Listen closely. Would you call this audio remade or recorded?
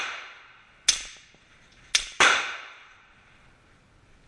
recorded